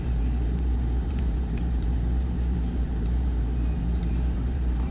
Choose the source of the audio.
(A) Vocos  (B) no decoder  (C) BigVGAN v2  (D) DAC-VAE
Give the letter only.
C